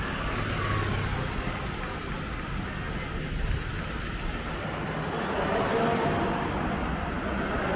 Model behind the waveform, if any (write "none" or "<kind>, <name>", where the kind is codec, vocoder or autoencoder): none